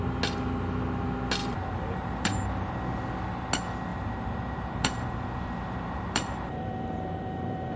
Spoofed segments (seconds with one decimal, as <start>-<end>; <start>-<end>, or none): 1.4-2.7; 3.9-7.8